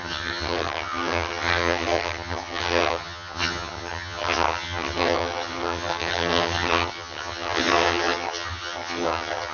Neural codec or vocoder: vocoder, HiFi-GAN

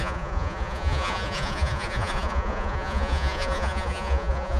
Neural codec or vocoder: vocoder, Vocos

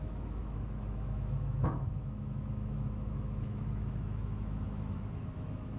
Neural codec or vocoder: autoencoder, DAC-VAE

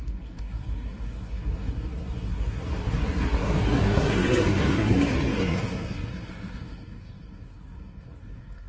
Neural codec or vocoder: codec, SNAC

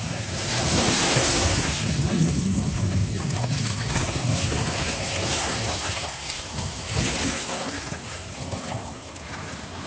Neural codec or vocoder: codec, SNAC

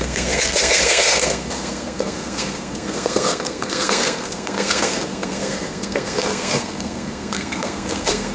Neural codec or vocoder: codec, SNAC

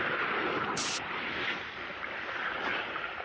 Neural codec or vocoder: none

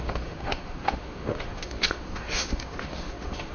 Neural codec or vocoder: autoencoder, DAC-VAE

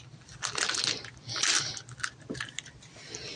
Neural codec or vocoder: none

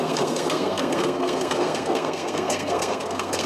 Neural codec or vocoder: codec, SNAC